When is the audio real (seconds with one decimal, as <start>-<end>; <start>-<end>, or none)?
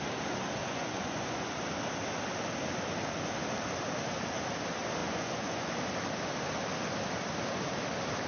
0.0-0.6; 1.5-5.0; 5.7-8.3